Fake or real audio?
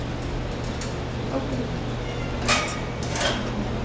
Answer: real